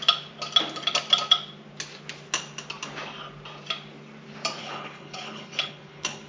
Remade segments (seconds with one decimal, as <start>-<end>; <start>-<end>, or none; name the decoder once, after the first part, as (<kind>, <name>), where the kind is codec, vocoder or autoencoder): 4.6-6.3 (codec, HILCodec)